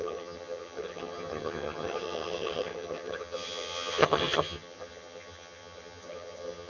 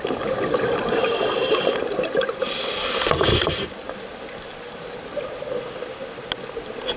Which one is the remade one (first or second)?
first